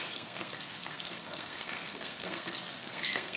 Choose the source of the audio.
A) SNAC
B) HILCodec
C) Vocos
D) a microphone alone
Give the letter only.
A